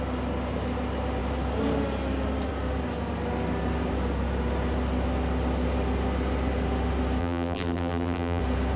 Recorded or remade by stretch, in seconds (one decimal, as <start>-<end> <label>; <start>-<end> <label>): 0.0-7.2 recorded; 7.2-8.4 remade; 8.4-8.8 recorded